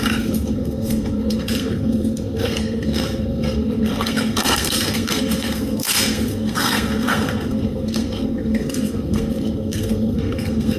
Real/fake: fake